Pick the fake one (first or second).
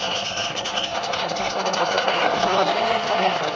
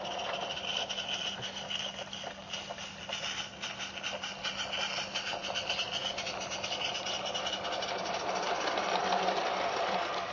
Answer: first